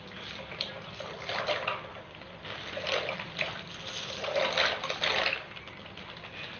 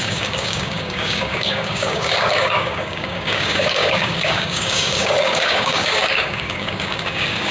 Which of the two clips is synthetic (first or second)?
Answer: second